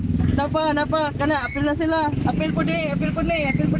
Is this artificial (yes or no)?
no